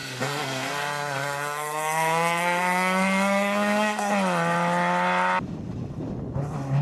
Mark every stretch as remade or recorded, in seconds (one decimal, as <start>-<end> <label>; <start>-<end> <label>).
0.0-4.1 remade; 4.1-6.8 recorded